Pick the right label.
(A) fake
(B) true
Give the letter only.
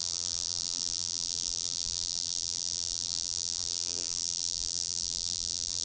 A